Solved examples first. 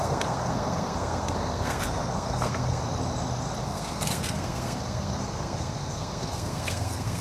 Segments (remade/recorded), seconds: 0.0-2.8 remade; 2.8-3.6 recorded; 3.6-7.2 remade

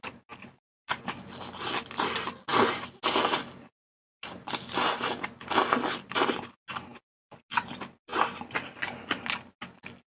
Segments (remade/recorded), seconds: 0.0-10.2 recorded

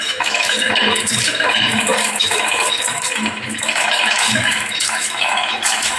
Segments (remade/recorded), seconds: 0.0-6.0 remade

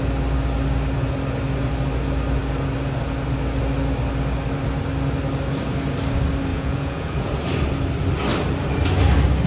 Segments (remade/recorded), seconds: 0.0-6.5 recorded; 6.5-7.3 remade; 7.3-9.5 recorded

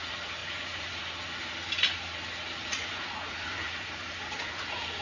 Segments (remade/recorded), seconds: 0.0-0.4 recorded; 0.4-1.0 remade; 1.0-2.6 recorded; 2.6-5.0 remade

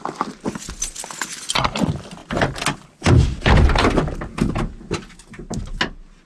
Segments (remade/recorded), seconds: 0.0-6.3 recorded

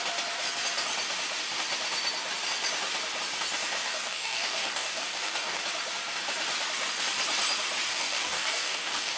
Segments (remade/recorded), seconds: 0.0-3.8 recorded; 3.8-5.6 remade; 5.6-7.9 recorded; 7.9-9.2 remade